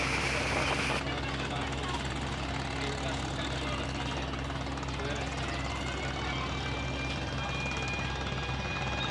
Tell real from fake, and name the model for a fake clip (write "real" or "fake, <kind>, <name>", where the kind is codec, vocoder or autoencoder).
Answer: real